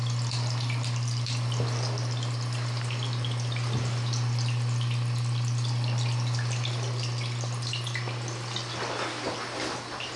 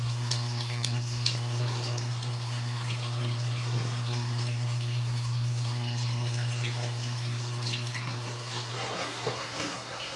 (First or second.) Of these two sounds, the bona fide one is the first